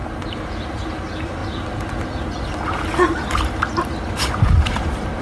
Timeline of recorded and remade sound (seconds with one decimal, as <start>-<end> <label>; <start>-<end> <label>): 0.0-1.4 remade; 1.4-4.5 recorded; 4.5-5.2 remade